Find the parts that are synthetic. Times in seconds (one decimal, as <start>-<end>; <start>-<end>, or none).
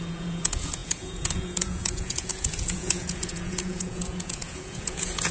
0.0-5.3